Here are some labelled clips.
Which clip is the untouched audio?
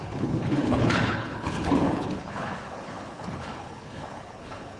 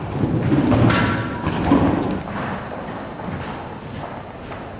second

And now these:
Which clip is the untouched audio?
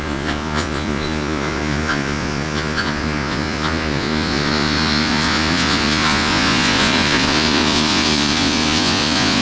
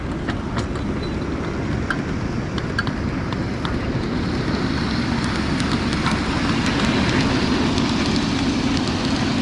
second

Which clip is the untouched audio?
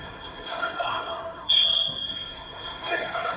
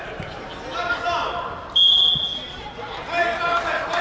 second